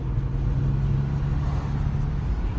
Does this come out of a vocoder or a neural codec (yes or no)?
no